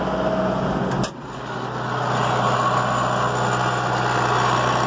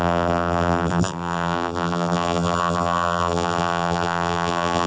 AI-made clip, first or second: second